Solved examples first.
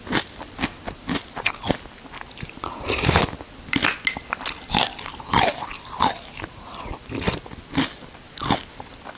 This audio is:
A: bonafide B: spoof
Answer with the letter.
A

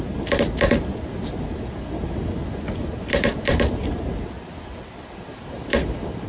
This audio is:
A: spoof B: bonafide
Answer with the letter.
B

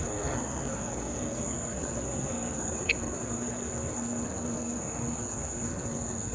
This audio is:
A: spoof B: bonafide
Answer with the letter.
A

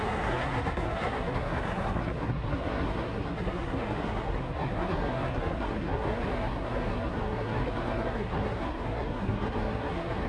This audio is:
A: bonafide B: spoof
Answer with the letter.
B